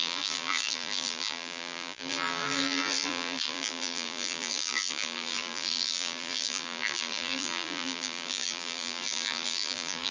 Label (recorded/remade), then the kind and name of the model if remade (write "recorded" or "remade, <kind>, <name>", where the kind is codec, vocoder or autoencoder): remade, vocoder, BigVGAN v2